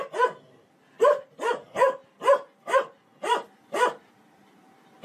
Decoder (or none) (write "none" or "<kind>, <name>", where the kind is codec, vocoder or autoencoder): none